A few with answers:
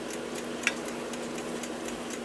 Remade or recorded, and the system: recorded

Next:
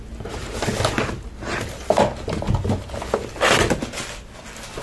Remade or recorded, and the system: recorded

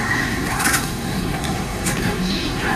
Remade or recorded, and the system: remade, codec, SNAC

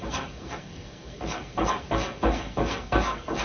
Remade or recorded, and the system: remade, codec, SNAC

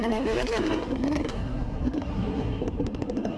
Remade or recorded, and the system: remade, codec, SNAC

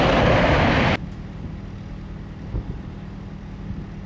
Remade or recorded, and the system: recorded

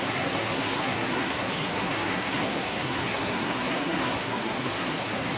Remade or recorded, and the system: remade, codec, SNAC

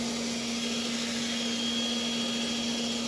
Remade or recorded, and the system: recorded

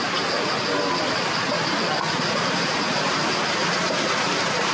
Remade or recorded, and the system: recorded